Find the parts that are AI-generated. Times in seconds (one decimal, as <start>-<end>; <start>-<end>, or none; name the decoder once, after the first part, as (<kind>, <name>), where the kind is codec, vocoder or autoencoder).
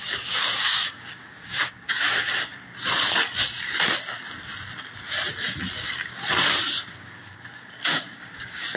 0.0-2.5 (codec, DAC); 6.9-8.8